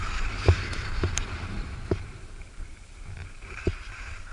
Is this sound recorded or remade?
remade